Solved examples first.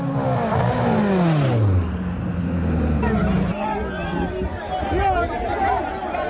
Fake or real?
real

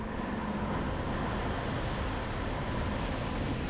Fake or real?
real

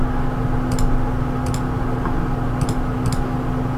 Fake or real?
real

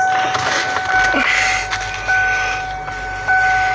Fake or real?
real